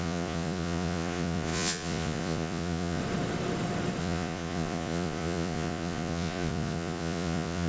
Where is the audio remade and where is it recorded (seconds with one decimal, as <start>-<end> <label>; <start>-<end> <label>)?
0.0-3.0 remade; 3.0-4.0 recorded; 4.0-7.7 remade